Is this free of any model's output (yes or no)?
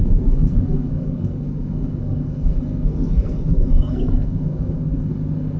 no